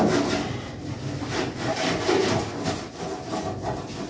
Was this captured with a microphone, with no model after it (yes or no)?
yes